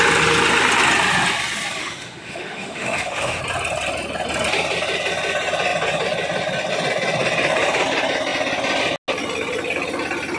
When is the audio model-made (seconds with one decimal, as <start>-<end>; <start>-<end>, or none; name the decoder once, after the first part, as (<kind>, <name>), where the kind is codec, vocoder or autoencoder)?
1.8-3.4 (autoencoder, DAC-VAE)